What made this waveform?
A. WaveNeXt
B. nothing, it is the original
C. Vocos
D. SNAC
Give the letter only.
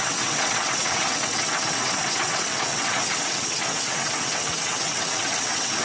A